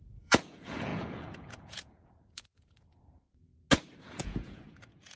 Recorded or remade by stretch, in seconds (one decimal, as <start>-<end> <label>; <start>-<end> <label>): 0.0-3.5 remade; 3.5-4.0 recorded; 4.0-5.2 remade